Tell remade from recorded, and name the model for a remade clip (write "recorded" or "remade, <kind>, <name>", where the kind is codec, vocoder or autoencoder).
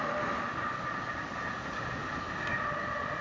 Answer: recorded